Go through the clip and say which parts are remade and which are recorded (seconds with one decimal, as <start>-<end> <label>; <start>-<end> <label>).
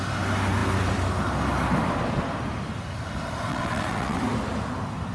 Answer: 0.0-3.5 recorded; 3.5-4.2 remade; 4.2-5.1 recorded